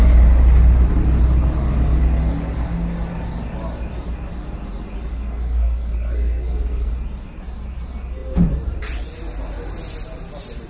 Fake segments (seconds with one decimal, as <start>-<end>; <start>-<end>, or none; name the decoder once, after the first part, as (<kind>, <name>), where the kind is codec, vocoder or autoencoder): 5.1-6.9 (codec, SNAC)

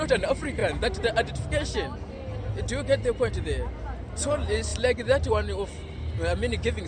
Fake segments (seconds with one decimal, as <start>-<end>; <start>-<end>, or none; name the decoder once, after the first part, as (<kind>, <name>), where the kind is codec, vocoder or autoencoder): 0.0-0.6 (vocoder, BigVGAN v2); 3.3-4.7; 5.3-6.9

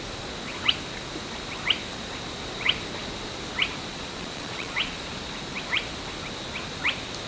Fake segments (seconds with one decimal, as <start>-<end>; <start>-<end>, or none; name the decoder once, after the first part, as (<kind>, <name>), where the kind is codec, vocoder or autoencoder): 4.2-5.0 (vocoder, Vocos)